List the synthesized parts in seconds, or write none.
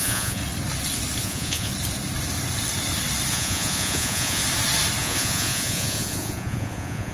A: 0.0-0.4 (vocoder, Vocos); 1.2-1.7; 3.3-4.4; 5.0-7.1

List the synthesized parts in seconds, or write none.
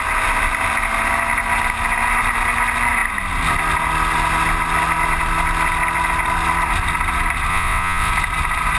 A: 7.5-8.1 (vocoder, WaveNeXt)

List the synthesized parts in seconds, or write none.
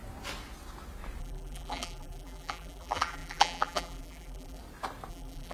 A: 1.2-4.6 (vocoder, BigVGAN v2); 5.1-5.5